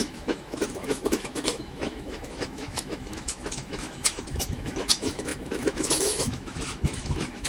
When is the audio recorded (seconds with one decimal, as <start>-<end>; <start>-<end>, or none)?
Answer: none